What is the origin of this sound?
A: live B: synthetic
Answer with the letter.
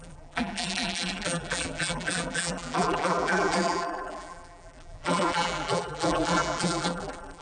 B